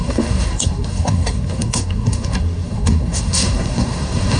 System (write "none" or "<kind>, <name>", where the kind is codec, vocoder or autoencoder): codec, SNAC